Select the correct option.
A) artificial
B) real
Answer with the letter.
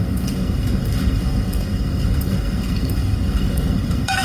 A